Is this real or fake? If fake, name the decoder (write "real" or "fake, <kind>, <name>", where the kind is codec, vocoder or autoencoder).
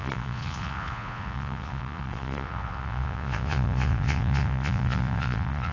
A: fake, vocoder, Vocos